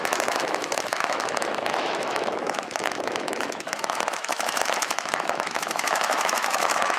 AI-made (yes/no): yes